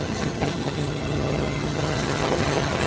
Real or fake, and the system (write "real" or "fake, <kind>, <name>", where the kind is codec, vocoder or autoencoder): fake, vocoder, HiFi-GAN